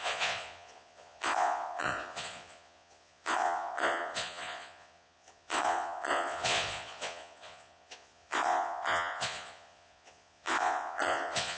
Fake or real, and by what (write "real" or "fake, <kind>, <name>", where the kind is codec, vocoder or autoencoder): fake, vocoder, Vocos